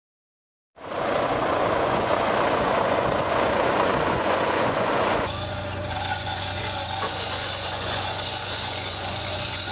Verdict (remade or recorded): remade